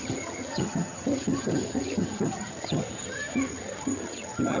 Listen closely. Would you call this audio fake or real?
fake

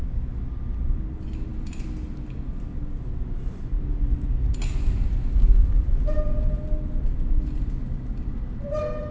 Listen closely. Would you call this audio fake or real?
real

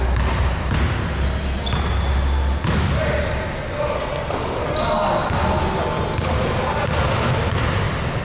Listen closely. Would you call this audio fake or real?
real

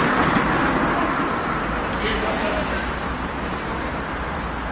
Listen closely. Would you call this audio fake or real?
real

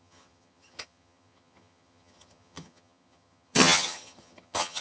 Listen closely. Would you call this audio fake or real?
fake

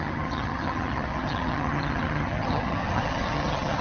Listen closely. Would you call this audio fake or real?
fake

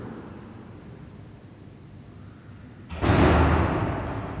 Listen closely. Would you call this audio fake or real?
real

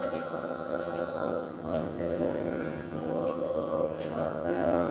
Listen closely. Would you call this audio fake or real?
fake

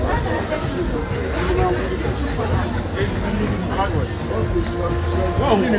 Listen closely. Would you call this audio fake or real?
real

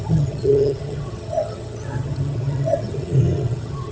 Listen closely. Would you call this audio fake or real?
fake